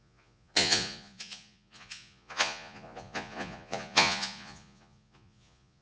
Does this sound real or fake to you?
fake